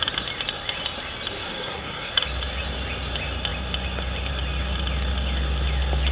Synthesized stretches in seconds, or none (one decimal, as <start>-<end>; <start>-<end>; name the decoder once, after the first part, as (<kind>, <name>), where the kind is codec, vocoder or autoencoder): 1.4-2.1 (codec, SNAC)